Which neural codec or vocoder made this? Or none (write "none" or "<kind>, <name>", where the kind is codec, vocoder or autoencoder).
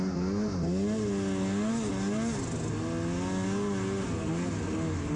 none